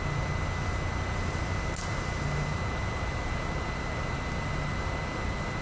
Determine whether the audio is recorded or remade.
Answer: recorded